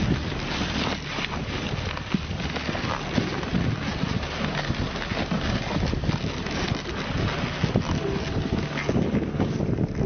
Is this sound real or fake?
real